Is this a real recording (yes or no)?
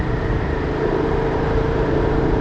no